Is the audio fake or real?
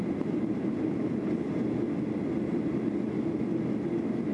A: fake